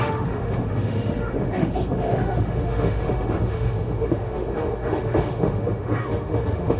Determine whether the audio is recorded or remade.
remade